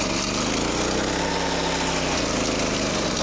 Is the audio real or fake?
real